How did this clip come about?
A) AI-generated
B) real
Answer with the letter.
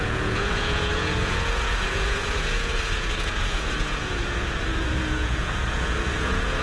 A